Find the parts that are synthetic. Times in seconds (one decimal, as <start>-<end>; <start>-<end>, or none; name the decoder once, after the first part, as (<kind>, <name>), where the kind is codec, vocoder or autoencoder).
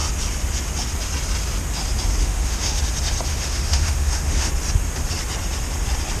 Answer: 2.2-2.8 (autoencoder, DAC-VAE); 3.3-4.5